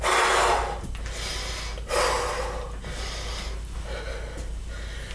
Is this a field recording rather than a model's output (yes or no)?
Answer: yes